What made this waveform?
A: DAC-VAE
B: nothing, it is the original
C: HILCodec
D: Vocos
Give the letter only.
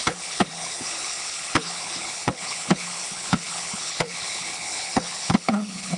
C